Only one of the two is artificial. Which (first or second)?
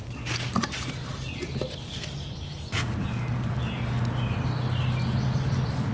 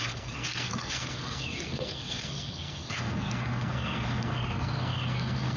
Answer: second